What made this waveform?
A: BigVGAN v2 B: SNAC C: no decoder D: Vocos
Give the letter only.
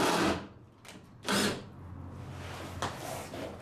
C